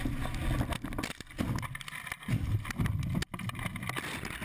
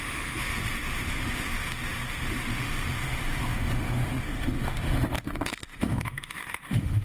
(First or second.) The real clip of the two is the first